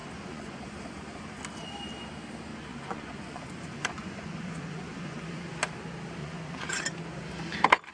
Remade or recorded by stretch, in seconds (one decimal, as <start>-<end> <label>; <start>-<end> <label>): 0.0-1.4 remade; 1.4-2.5 recorded; 2.5-5.5 remade; 5.5-6.2 recorded; 6.2-6.8 remade; 6.8-7.9 recorded